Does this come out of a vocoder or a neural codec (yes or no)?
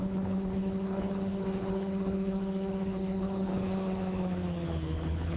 yes